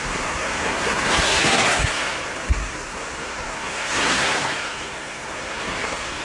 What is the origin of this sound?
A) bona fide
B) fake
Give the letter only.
B